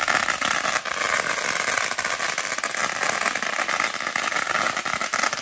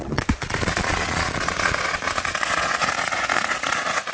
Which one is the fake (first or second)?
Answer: second